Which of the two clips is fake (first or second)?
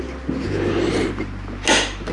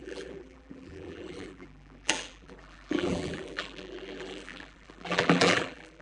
second